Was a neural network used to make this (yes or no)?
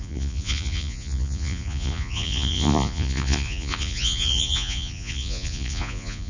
yes